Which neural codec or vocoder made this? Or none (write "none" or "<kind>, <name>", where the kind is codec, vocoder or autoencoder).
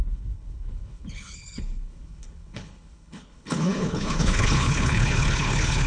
codec, HILCodec